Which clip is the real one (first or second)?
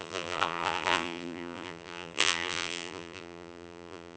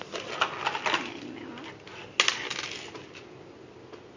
second